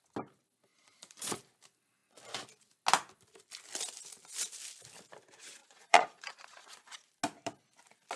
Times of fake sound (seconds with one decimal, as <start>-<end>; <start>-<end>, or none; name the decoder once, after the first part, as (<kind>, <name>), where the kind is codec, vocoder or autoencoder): 0.7-1.4 (vocoder, Vocos); 5.6-7.1